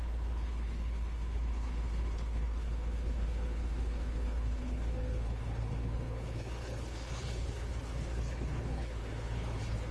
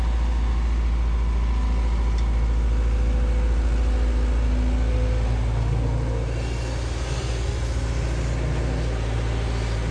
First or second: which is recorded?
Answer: second